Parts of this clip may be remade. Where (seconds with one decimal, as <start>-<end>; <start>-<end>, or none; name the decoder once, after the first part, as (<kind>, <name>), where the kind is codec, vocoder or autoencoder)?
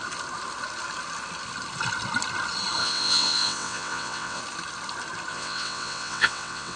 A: 2.8-4.4 (vocoder, WaveNeXt); 5.3-6.8